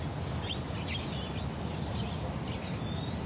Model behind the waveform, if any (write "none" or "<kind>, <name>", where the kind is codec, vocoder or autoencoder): none